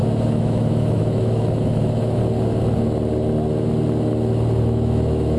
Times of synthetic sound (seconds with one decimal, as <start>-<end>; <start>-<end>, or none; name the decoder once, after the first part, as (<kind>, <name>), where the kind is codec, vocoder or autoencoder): 0.0-2.2 (autoencoder, DAC-VAE); 4.6-5.4